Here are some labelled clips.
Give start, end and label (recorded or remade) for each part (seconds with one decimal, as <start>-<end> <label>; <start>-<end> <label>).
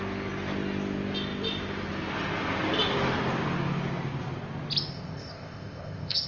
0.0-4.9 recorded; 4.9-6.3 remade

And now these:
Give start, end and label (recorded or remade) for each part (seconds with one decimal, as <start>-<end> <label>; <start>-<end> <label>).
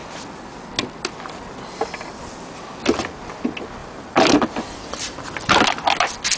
0.0-3.8 recorded; 3.8-4.8 remade; 4.8-6.4 recorded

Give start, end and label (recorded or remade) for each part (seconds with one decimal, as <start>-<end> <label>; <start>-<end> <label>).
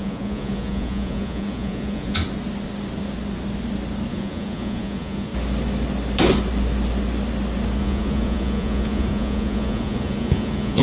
0.0-2.2 remade; 2.2-4.1 recorded; 4.1-5.3 remade; 5.3-7.8 recorded; 7.8-10.8 remade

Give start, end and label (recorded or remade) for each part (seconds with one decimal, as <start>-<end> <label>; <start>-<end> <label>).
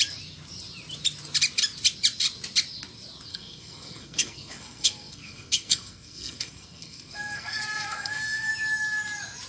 0.0-3.3 recorded; 3.3-8.5 remade; 8.5-9.5 recorded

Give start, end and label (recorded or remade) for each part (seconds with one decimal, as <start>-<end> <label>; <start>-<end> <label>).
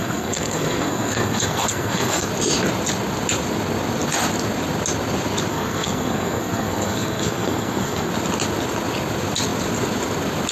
0.0-2.3 remade; 2.3-5.5 recorded; 5.5-8.1 remade; 8.1-10.5 recorded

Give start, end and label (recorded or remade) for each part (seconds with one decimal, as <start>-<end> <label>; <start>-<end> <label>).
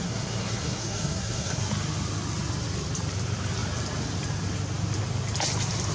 0.0-1.7 remade; 1.7-5.9 recorded